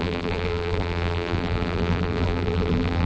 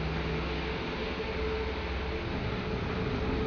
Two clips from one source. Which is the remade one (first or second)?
first